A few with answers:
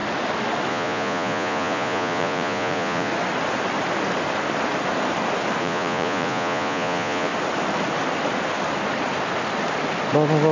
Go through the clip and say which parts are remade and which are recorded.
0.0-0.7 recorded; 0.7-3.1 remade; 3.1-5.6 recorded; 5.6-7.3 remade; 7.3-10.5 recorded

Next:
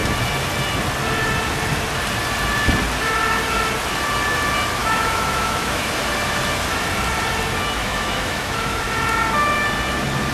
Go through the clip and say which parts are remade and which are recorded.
0.0-4.8 recorded; 4.8-5.9 remade; 5.9-7.8 recorded; 7.8-8.8 remade; 8.8-10.3 recorded

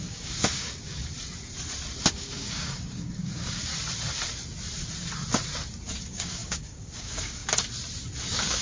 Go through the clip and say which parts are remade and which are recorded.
0.0-1.0 remade; 1.0-2.1 recorded; 2.1-3.7 remade; 3.7-6.0 recorded; 6.0-7.4 remade; 7.4-8.2 recorded; 8.2-8.6 remade

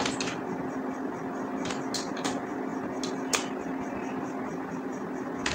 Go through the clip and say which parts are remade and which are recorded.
0.0-5.5 recorded

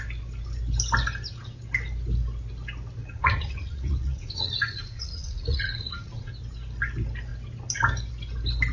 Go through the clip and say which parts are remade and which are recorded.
0.0-3.0 recorded; 3.0-6.3 remade; 6.3-8.7 recorded